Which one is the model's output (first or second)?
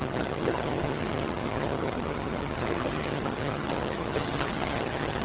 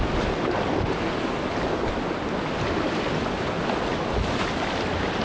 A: first